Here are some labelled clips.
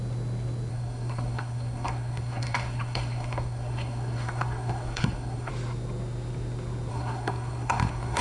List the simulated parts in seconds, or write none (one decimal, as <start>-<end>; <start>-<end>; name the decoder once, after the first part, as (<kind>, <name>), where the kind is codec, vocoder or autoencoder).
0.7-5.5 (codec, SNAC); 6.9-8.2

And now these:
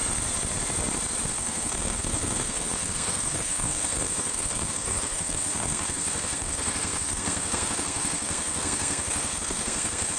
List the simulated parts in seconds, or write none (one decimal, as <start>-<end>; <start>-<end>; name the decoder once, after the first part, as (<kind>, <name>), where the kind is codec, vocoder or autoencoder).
1.3-10.2 (codec, SNAC)

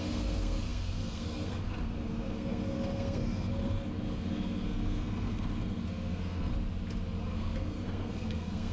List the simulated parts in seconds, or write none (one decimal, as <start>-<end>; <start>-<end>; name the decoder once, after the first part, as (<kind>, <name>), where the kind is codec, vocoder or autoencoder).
0.0-6.5 (codec, SNAC); 7.2-8.7

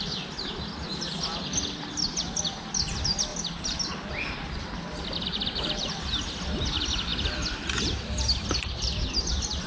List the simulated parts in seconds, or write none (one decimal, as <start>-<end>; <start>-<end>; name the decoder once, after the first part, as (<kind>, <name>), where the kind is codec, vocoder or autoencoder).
none